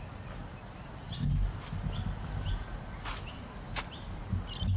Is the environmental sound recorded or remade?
recorded